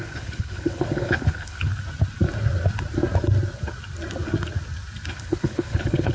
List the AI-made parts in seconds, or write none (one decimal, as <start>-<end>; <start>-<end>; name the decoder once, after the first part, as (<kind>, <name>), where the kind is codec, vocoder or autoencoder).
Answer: 0.0-1.7 (codec, HILCodec); 5.1-6.1